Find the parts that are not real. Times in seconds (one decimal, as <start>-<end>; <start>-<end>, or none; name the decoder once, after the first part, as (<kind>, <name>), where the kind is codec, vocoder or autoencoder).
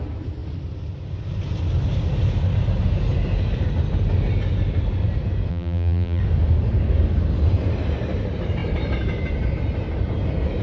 5.5-6.2 (vocoder, BigVGAN v2)